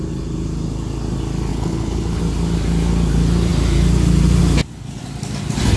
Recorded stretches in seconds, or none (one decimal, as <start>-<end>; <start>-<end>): 0.0-1.5; 2.2-5.8